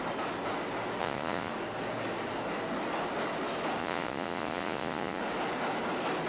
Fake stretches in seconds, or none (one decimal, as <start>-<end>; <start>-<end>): 1.0-1.5; 3.8-5.2